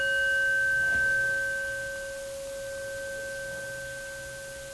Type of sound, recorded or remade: recorded